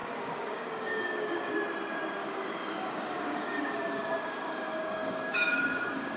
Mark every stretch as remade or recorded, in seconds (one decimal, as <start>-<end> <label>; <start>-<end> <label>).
0.0-1.5 remade; 1.5-2.2 recorded; 2.2-6.2 remade